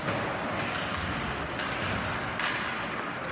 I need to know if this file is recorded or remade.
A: recorded